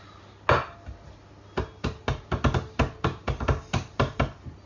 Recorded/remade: recorded